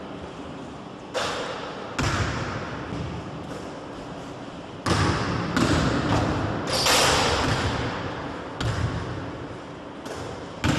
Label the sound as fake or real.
real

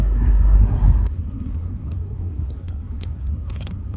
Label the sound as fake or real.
fake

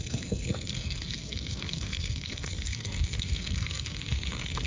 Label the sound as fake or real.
fake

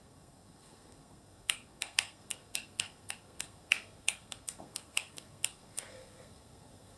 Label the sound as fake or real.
fake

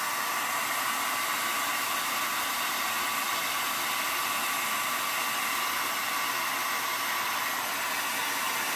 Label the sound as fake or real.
real